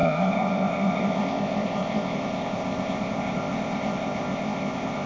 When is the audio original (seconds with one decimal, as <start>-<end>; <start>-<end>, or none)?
none